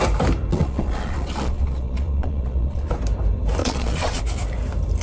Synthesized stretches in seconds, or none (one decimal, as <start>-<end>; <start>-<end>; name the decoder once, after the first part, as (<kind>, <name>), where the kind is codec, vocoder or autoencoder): 0.5-2.9 (vocoder, Vocos); 3.6-4.2